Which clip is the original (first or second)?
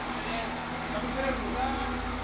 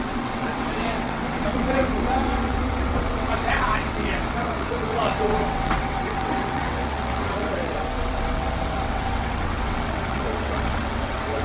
first